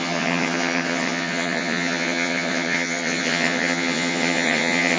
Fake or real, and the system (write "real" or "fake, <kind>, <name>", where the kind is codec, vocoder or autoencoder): fake, vocoder, HiFi-GAN